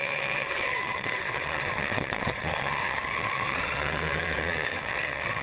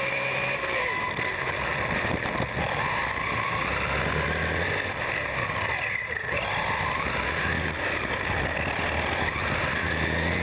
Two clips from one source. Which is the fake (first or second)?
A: first